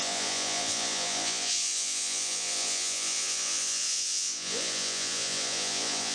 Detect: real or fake fake